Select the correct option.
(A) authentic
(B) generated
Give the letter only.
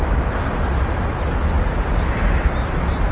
A